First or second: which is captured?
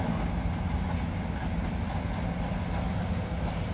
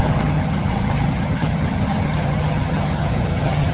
first